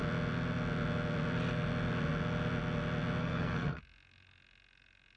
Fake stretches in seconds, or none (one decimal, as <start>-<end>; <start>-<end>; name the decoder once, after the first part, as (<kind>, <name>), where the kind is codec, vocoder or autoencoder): 3.2-3.8 (codec, SNAC)